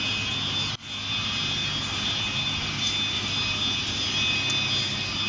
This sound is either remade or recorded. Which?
recorded